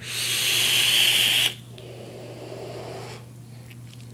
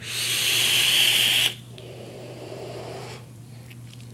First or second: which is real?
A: first